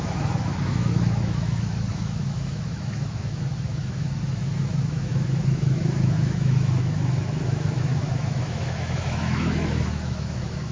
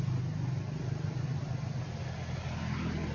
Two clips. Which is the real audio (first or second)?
second